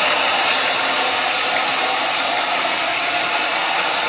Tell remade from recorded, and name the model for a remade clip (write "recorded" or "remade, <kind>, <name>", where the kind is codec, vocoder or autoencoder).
remade, vocoder, BigVGAN v2